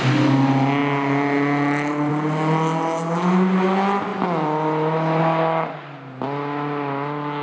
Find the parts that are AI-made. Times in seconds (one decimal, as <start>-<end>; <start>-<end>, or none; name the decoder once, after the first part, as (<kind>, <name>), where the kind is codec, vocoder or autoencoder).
none